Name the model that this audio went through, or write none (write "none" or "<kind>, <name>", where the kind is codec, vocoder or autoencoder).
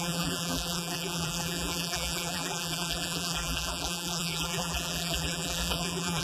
vocoder, BigVGAN v2